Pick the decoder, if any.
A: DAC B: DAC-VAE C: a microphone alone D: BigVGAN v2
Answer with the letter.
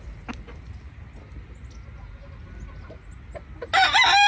C